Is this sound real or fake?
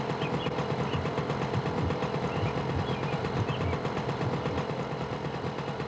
real